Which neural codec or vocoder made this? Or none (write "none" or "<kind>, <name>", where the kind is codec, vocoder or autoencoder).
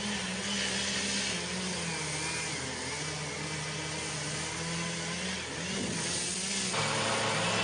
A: none